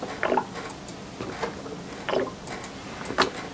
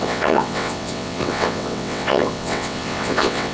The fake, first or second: second